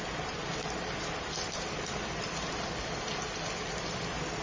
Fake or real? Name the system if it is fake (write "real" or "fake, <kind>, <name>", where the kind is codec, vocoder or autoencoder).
real